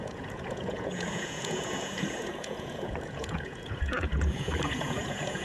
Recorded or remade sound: remade